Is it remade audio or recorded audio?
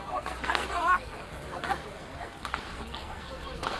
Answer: remade